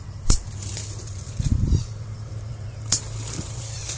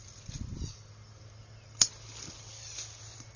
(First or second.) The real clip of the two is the second